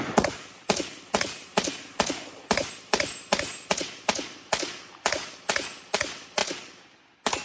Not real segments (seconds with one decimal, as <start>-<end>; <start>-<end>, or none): 0.0-6.4